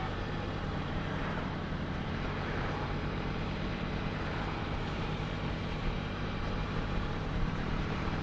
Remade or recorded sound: remade